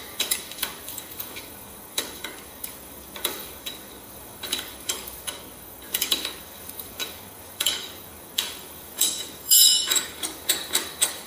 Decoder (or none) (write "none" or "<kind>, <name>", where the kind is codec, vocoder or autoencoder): codec, DAC